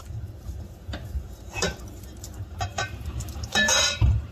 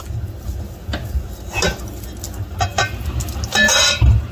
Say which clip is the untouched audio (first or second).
second